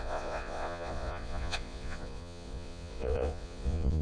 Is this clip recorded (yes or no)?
no